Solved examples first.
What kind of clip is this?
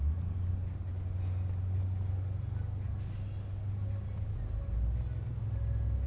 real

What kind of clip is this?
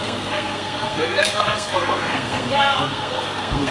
fake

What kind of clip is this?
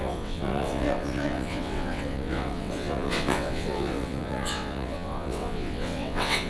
fake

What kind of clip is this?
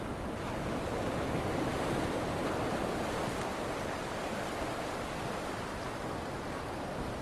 real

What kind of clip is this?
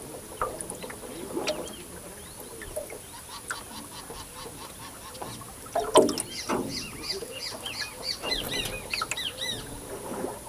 real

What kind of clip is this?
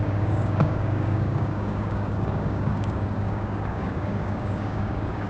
fake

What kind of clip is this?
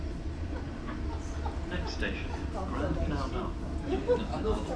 real